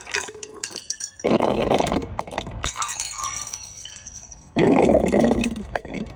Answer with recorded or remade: remade